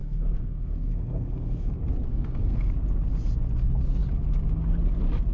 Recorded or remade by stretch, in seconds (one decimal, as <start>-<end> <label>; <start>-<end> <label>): 0.0-1.7 remade; 1.7-2.1 recorded; 2.1-2.7 remade; 2.7-5.3 recorded